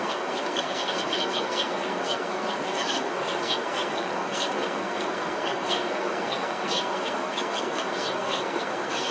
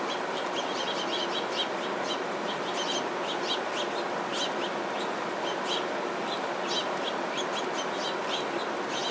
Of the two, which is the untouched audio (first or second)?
second